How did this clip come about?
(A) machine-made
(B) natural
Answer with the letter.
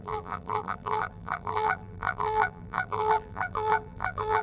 A